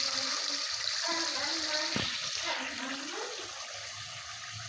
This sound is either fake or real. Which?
real